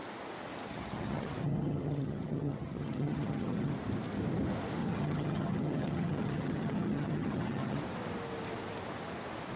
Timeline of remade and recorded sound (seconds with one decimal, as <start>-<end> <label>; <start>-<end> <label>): 0.0-0.7 recorded; 0.7-3.7 remade; 3.7-4.8 recorded; 4.8-7.8 remade; 7.8-9.6 recorded

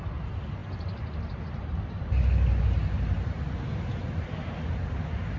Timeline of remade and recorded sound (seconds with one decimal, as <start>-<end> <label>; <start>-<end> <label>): 0.0-5.4 recorded

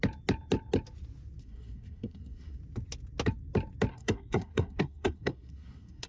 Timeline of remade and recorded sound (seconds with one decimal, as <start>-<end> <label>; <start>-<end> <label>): 0.0-1.4 recorded; 1.4-2.6 remade; 2.6-3.9 recorded; 3.9-6.1 remade